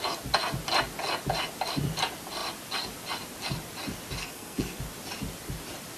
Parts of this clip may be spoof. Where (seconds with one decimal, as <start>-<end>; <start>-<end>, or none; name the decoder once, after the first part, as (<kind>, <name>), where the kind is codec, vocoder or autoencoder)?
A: 4.2-4.8 (codec, SNAC)